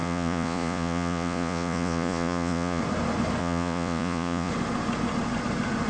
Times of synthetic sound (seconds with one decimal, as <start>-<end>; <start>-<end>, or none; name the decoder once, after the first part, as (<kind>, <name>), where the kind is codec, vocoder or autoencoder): 0.0-2.8 (vocoder, Vocos); 3.4-4.5